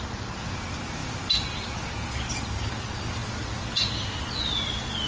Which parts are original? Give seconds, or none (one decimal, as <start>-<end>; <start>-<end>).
0.0-5.1